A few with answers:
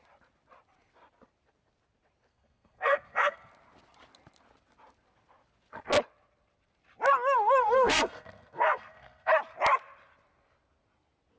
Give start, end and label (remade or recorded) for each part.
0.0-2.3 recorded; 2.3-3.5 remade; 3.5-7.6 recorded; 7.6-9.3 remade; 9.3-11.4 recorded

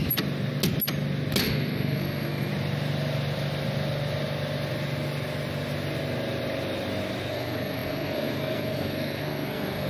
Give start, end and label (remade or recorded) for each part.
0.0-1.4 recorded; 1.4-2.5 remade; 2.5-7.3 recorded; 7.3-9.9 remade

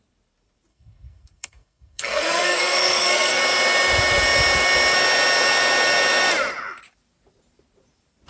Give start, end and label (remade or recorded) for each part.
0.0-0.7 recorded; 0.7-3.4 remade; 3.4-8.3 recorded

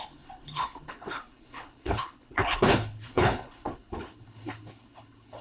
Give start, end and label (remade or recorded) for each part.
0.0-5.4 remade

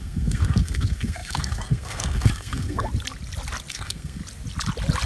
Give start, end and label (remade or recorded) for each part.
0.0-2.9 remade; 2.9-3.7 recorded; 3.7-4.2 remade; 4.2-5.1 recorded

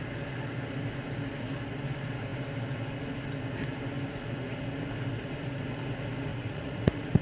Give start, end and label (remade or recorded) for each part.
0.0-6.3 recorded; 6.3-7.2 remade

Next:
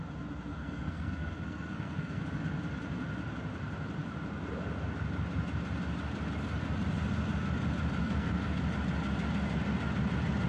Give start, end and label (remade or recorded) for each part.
0.0-0.5 recorded; 0.5-2.2 remade; 2.2-8.0 recorded; 8.0-8.6 remade; 8.6-10.5 recorded